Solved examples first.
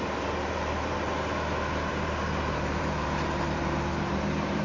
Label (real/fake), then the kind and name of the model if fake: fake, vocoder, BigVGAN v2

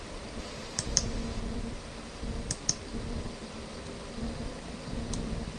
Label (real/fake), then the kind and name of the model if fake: fake, vocoder, BigVGAN v2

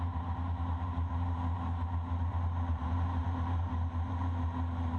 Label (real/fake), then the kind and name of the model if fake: fake, vocoder, BigVGAN v2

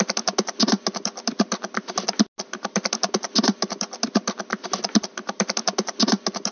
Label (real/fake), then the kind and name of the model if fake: real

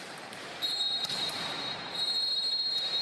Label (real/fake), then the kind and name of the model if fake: fake, vocoder, BigVGAN v2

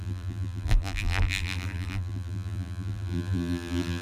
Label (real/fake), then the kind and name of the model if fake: fake, vocoder, BigVGAN v2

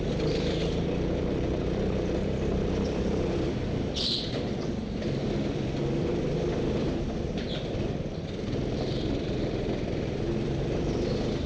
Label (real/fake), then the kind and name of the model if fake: fake, vocoder, BigVGAN v2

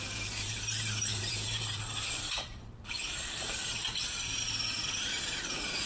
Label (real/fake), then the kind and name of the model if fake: fake, vocoder, BigVGAN v2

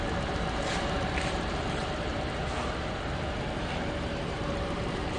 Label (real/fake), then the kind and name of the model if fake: fake, vocoder, BigVGAN v2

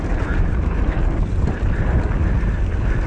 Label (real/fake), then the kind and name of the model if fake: real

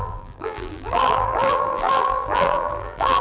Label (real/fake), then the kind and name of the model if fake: fake, vocoder, BigVGAN v2